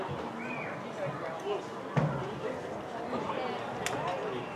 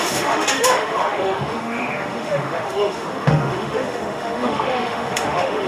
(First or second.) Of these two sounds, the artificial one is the second